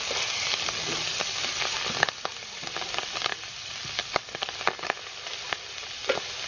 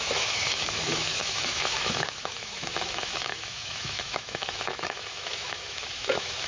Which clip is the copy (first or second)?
second